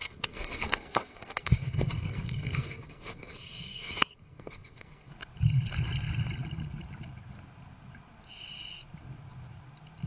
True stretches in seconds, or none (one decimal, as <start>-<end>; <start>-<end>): 5.1-10.1